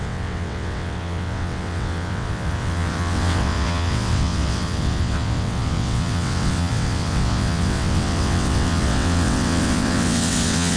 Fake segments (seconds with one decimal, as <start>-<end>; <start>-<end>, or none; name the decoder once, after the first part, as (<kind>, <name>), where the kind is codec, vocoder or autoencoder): 0.0-10.8 (vocoder, WaveNeXt)